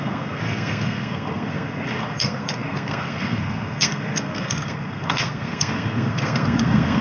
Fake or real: fake